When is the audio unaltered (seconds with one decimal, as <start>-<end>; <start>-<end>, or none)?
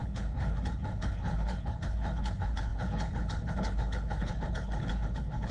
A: none